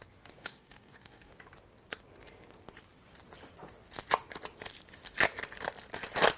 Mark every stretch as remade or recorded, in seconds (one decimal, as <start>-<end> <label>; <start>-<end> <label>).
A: 0.0-0.4 recorded; 0.4-1.3 remade; 1.3-6.4 recorded